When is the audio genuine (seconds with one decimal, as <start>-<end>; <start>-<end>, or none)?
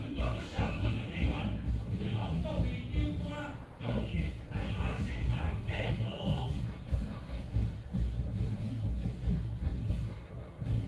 2.4-3.8